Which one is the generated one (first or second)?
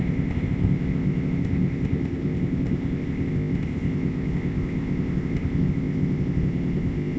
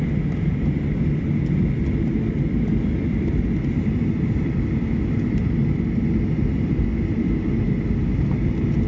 first